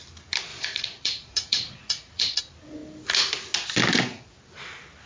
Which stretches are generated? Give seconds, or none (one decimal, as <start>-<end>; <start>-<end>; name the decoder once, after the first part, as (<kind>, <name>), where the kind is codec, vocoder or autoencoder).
0.5-2.4 (vocoder, Vocos)